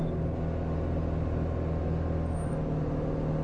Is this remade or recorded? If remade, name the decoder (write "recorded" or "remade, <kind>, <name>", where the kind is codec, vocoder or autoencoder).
recorded